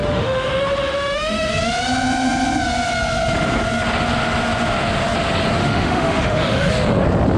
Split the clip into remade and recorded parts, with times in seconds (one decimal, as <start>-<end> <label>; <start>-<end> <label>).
0.0-1.5 remade; 1.5-5.6 recorded; 5.6-6.7 remade; 6.7-7.4 recorded